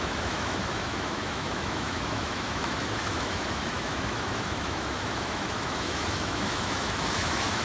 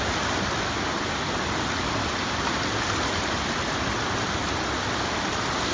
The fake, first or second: first